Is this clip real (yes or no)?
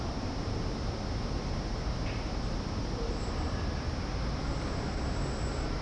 yes